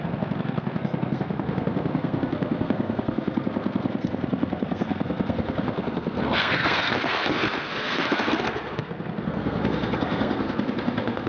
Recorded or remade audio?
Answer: remade